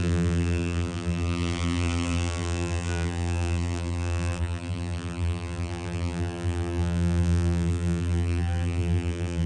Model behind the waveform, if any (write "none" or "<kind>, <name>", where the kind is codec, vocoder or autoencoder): vocoder, BigVGAN v2